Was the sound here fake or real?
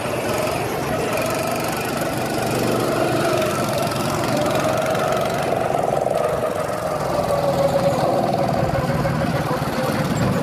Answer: real